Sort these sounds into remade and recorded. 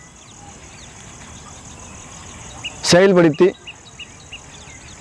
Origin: recorded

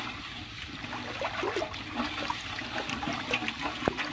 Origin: recorded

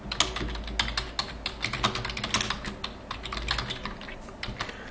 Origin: recorded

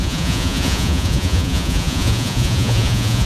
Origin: remade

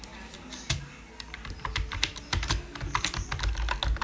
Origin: recorded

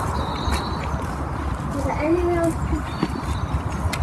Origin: recorded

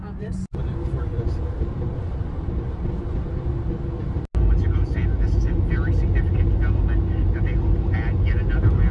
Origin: recorded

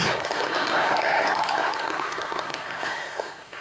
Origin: remade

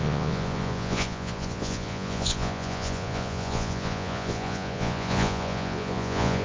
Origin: remade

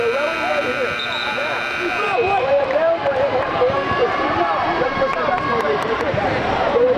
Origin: remade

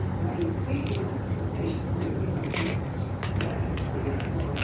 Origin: recorded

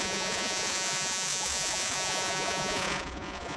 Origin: remade